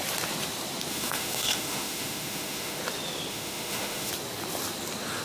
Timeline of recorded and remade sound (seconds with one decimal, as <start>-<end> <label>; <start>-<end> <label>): 0.0-0.9 recorded; 0.9-2.8 remade; 2.8-3.3 recorded; 3.3-4.1 remade; 4.1-5.2 recorded